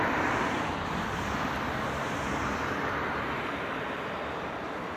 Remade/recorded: remade